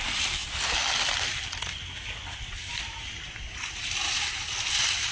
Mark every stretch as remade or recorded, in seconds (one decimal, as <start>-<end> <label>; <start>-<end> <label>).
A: 0.0-5.1 recorded